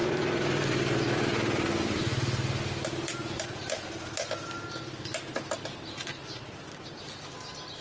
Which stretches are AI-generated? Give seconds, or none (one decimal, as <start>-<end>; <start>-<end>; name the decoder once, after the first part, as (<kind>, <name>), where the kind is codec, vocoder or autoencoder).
0.0-3.4 (vocoder, BigVGAN v2)